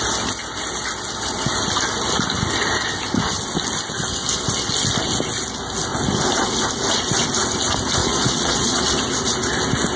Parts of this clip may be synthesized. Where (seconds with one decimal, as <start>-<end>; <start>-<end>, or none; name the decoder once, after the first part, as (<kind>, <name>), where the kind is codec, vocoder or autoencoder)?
8.0-8.8 (vocoder, Vocos)